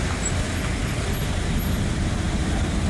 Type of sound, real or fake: real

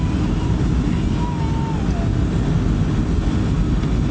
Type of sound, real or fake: real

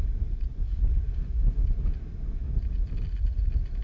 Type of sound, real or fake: real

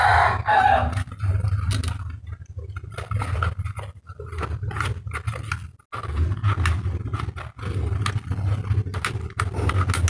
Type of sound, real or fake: real